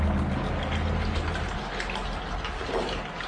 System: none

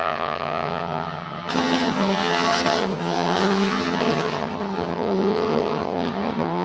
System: vocoder, HiFi-GAN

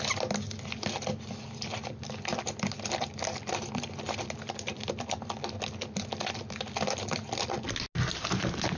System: none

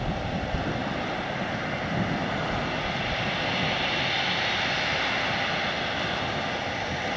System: none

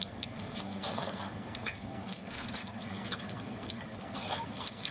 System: codec, SNAC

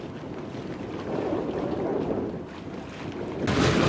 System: none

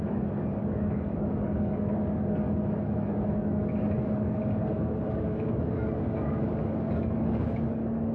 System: codec, DAC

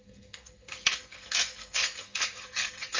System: codec, SNAC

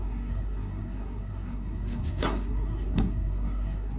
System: codec, SNAC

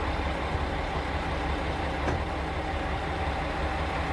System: none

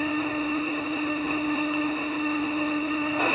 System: codec, SNAC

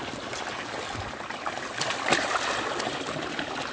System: none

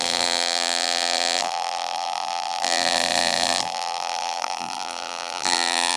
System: vocoder, BigVGAN v2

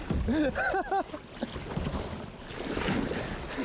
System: none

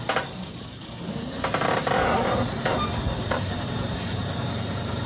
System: vocoder, BigVGAN v2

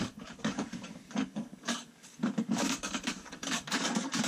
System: codec, DAC